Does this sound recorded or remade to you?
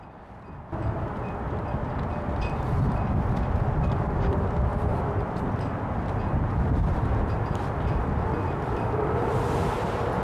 recorded